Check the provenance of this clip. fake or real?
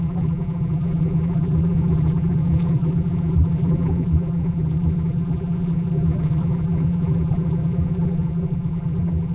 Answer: fake